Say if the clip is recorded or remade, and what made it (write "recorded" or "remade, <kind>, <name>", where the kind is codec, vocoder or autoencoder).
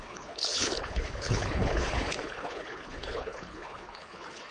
remade, codec, HILCodec